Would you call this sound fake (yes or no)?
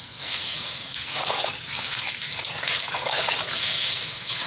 yes